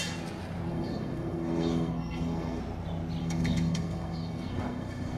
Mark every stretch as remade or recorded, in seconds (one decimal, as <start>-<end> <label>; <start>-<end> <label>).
0.0-0.7 recorded; 0.7-2.6 remade; 2.6-3.2 recorded; 3.2-5.2 remade